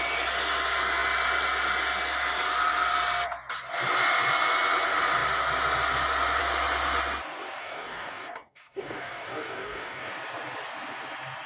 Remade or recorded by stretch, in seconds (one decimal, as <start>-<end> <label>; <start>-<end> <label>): 0.0-7.6 recorded; 7.6-10.1 remade; 10.1-11.5 recorded

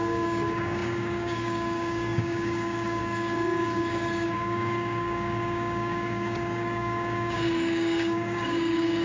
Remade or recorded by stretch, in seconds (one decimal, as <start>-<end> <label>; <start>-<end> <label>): 0.0-9.0 remade